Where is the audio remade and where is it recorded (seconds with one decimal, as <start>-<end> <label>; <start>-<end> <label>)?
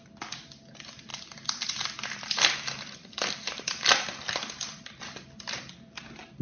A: 0.0-6.4 recorded